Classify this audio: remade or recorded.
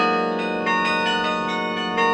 recorded